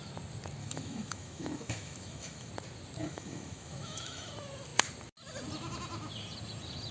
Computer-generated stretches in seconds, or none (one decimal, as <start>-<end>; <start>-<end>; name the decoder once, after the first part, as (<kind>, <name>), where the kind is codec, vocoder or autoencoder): 0.6-2.5 (autoencoder, DAC-VAE); 3.0-4.3